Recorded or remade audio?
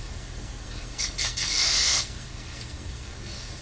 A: remade